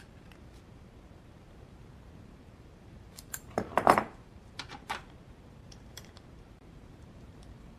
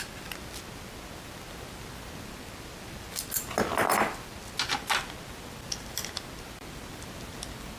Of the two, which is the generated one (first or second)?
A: first